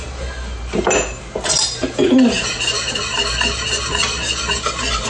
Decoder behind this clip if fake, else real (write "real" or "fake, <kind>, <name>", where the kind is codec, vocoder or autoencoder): real